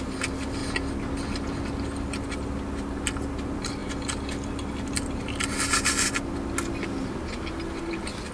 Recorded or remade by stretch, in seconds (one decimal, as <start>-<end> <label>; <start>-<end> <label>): 0.0-8.3 recorded